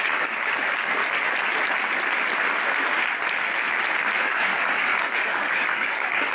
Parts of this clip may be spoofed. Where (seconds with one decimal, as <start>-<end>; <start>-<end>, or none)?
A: 0.0-1.0; 4.2-6.3